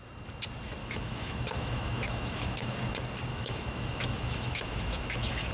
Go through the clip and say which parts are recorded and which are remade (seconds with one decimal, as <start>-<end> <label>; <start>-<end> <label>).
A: 0.0-0.8 recorded; 0.8-2.8 remade; 2.8-3.3 recorded; 3.3-5.5 remade